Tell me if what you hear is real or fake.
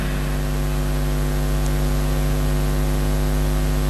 real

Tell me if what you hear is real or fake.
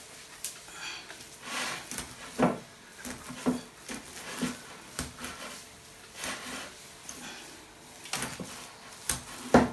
real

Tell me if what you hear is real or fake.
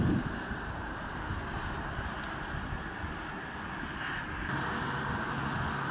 real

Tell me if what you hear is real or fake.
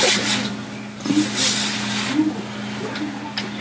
real